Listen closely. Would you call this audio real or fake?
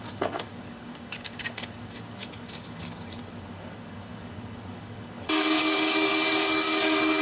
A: fake